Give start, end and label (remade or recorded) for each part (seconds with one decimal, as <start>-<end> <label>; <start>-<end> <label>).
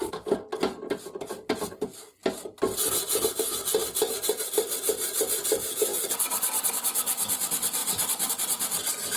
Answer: 0.0-7.8 recorded; 7.8-8.3 remade; 8.3-9.2 recorded